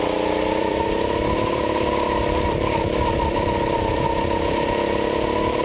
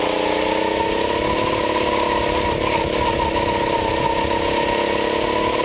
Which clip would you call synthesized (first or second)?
first